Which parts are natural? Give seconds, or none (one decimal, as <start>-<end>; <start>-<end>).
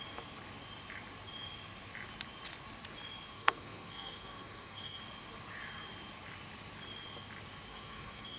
0.0-3.3; 5.0-7.7